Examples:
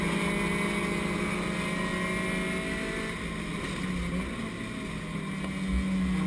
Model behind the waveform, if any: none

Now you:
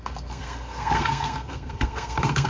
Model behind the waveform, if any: codec, SNAC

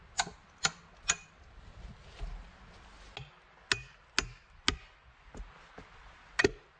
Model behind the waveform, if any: none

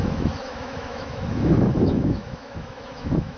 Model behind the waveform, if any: autoencoder, DAC-VAE